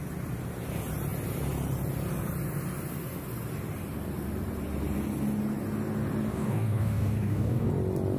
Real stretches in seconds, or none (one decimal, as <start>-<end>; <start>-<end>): 0.0-6.3; 7.7-8.2